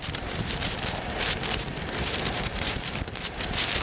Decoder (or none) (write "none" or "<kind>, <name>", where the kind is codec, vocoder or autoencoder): vocoder, BigVGAN v2